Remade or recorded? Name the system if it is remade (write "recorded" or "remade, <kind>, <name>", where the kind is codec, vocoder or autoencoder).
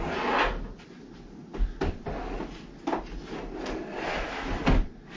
recorded